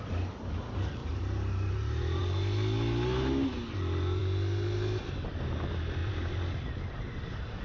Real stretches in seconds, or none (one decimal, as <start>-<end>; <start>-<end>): 0.0-1.0; 1.7-7.6